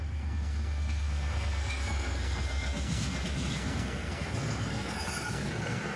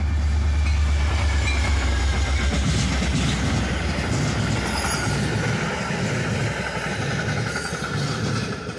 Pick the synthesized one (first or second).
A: first